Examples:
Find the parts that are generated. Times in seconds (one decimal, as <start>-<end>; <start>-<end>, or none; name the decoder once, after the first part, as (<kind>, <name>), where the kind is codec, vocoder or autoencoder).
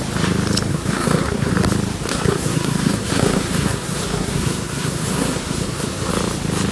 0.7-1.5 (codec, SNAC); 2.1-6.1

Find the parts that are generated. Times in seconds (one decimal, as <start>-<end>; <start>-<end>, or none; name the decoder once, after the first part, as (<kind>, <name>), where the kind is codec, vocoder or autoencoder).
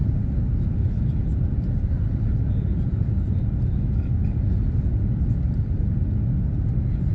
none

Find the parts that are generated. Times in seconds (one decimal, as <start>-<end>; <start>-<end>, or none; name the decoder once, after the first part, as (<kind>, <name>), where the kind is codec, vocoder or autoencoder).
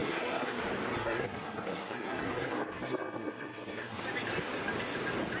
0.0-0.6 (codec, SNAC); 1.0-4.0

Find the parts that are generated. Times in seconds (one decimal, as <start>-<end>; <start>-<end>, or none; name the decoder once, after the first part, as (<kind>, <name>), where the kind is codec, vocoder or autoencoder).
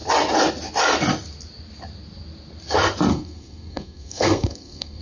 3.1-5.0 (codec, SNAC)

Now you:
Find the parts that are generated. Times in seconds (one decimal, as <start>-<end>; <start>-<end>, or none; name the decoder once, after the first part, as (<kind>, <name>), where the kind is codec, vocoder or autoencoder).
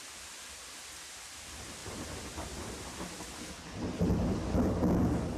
none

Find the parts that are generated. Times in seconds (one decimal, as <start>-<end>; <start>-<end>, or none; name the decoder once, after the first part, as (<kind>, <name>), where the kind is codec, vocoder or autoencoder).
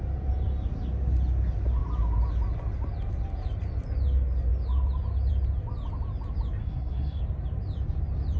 6.6-7.2 (codec, SNAC)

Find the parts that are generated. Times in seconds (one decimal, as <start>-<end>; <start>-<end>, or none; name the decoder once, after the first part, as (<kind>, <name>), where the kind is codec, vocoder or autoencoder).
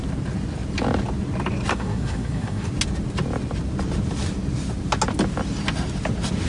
1.7-2.7 (codec, SNAC)